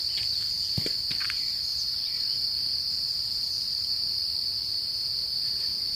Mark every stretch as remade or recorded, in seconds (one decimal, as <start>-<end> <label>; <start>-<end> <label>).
0.0-4.6 remade; 4.6-5.4 recorded; 5.4-5.9 remade